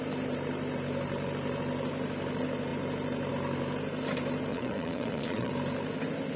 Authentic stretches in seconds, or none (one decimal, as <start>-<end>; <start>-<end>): 0.0-4.5; 5.5-6.4